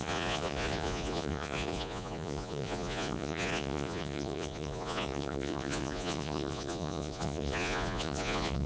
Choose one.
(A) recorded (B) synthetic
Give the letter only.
B